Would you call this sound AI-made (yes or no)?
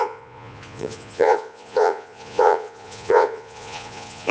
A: yes